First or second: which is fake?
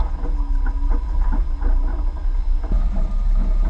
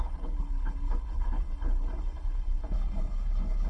second